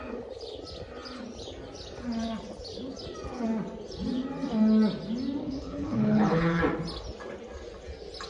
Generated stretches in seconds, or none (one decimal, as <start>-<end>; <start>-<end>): 5.4-6.6